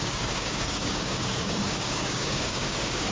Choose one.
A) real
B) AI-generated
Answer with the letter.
B